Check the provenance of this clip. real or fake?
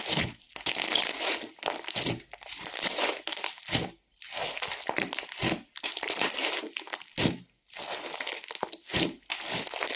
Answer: real